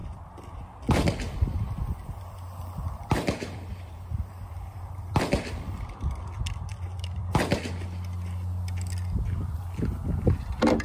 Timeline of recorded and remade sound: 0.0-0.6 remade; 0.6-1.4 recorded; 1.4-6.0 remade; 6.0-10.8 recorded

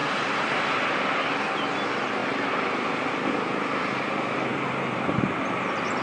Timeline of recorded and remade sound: 0.0-1.2 remade; 1.2-4.5 recorded; 4.5-5.4 remade; 5.4-6.0 recorded

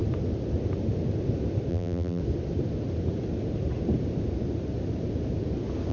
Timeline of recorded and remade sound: 0.0-1.7 recorded; 1.7-2.2 remade; 2.2-5.9 recorded